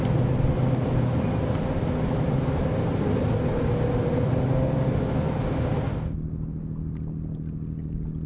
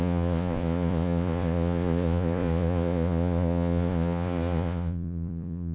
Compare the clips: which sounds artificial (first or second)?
second